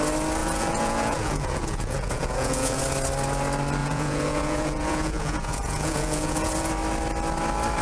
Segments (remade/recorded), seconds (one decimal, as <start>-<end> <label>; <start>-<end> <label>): 0.0-0.4 recorded; 0.4-2.8 remade; 2.8-3.8 recorded; 3.8-6.7 remade; 6.7-7.8 recorded